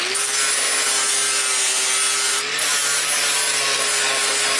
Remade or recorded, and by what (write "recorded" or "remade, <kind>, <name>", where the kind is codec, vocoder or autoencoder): recorded